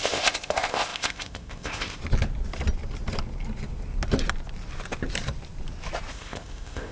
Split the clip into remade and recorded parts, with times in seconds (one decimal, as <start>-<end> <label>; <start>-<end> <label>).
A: 0.0-2.0 remade; 2.0-6.1 recorded; 6.1-6.9 remade